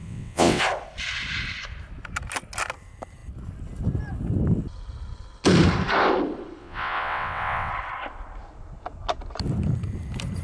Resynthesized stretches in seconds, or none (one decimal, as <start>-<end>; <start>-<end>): 0.0-0.6; 6.6-7.7